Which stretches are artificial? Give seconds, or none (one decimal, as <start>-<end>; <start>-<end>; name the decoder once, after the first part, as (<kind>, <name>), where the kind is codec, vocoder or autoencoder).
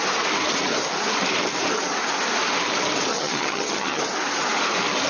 3.1-4.0 (vocoder, HiFi-GAN)